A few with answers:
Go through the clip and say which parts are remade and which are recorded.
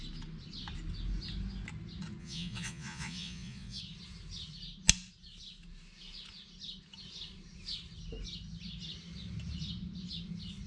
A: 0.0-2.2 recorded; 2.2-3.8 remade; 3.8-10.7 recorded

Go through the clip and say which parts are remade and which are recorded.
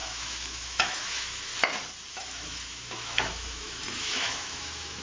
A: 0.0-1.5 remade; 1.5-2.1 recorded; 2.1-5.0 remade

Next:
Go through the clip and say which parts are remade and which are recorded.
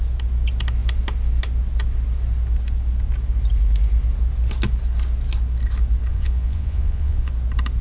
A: 0.0-6.1 recorded; 6.1-7.3 remade; 7.3-7.8 recorded